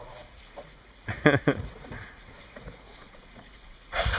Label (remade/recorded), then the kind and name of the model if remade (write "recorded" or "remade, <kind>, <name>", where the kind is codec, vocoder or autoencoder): remade, vocoder, Vocos